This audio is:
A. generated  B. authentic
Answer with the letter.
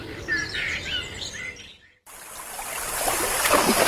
B